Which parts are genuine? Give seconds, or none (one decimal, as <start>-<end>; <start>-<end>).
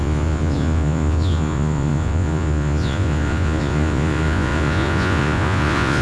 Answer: none